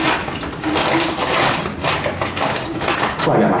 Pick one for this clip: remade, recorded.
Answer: recorded